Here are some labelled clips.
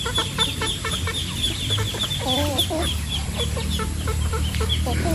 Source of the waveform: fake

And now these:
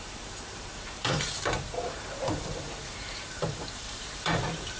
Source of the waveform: fake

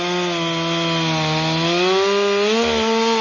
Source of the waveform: real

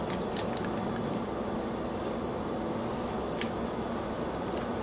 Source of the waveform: real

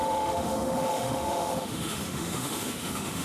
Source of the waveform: fake